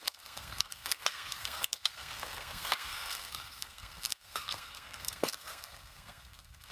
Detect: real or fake fake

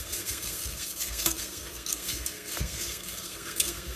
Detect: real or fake fake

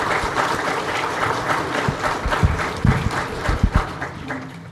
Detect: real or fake real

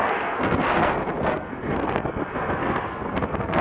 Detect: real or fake fake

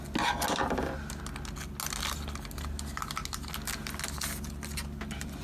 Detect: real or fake real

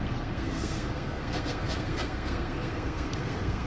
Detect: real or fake fake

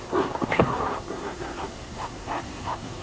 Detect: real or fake fake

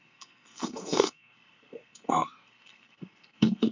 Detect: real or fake fake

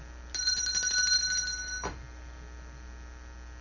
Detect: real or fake real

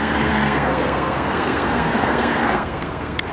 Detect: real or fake fake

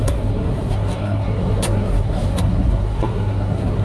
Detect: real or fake fake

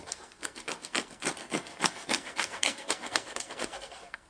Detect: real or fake fake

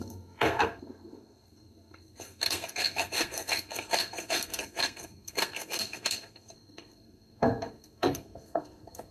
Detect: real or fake fake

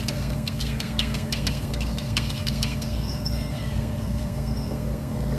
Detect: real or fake fake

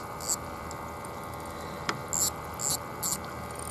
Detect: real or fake real